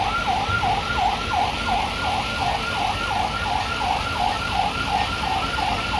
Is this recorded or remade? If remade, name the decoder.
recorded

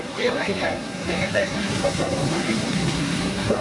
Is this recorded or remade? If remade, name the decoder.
remade, codec, SNAC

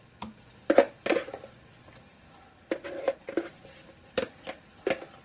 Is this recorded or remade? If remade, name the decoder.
recorded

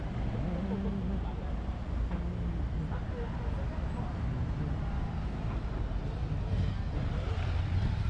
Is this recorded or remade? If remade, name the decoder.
recorded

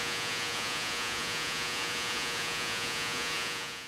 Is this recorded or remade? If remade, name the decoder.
remade, vocoder, Vocos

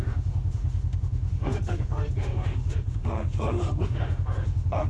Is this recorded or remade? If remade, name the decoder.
remade, autoencoder, DAC-VAE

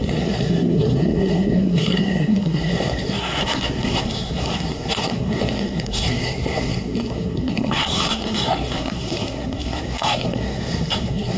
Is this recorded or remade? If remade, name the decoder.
remade, codec, SNAC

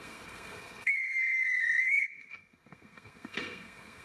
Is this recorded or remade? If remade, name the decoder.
remade, codec, SNAC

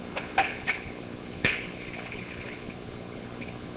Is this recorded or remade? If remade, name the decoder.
remade, codec, HILCodec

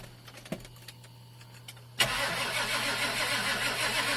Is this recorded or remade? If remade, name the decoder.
recorded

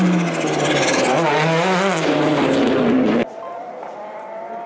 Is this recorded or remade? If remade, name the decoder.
recorded